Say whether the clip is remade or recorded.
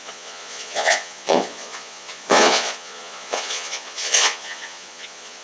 remade